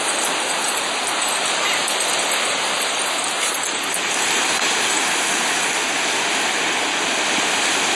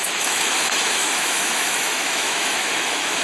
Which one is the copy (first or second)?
second